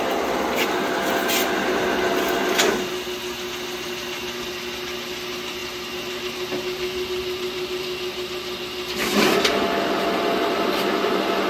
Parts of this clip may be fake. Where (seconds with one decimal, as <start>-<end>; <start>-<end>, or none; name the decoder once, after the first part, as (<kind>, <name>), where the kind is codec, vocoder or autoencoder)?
none